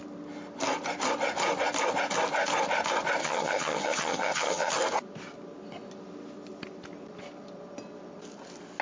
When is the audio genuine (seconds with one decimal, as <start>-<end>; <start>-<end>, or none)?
0.0-3.2; 4.7-8.8